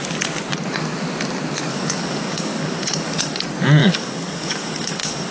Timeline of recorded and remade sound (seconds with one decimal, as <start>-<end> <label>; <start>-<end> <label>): 0.0-1.7 recorded; 1.7-3.4 remade; 3.4-3.8 recorded; 3.8-5.3 remade